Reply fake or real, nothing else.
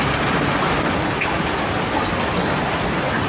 real